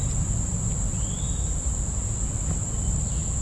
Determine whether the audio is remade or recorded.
recorded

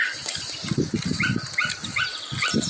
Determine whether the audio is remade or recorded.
recorded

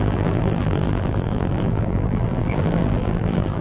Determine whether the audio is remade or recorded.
remade